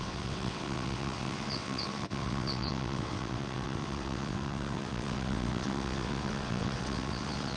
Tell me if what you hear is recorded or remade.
remade